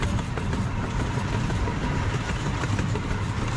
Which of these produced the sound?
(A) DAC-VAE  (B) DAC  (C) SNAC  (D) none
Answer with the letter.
D